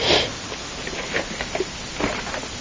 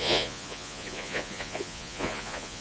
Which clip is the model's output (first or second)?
second